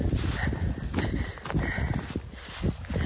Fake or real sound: real